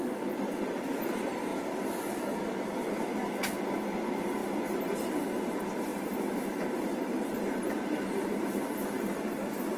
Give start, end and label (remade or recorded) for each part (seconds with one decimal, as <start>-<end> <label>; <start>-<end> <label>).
0.0-5.9 recorded; 5.9-8.6 remade; 8.6-9.8 recorded